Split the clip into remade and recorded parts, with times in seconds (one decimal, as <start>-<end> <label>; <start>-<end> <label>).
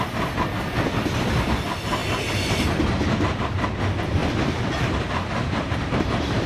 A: 0.0-4.2 recorded; 4.2-6.5 remade